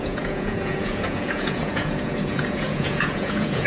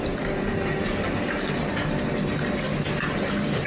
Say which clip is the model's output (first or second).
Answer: first